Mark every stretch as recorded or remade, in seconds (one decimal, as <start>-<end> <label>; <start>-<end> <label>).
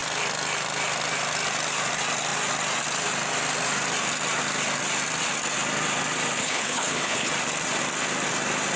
0.0-6.4 recorded; 6.4-7.3 remade; 7.3-8.8 recorded